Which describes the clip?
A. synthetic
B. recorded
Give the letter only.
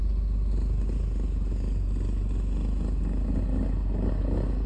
B